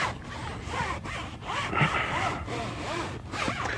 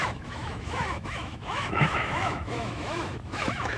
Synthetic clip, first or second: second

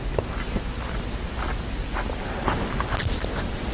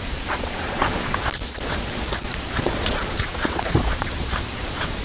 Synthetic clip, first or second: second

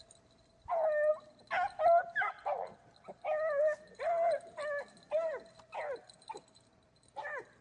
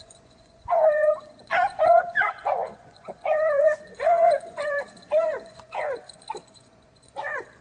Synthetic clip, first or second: second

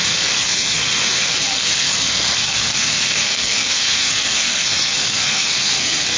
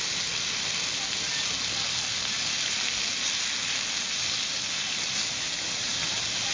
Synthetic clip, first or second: first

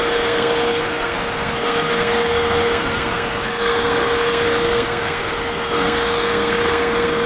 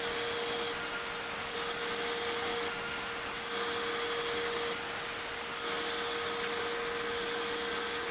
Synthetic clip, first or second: first